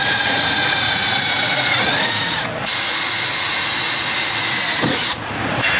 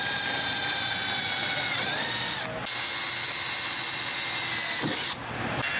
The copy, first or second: first